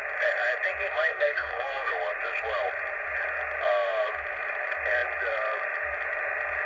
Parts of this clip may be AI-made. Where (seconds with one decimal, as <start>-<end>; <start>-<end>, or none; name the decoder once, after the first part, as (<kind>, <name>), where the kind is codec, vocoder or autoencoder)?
1.1-1.9 (codec, SNAC)